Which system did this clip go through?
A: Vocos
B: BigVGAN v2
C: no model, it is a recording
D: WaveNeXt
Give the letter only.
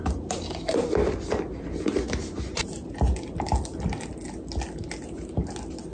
C